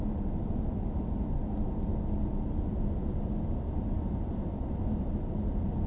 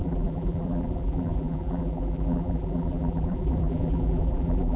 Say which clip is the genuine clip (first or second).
first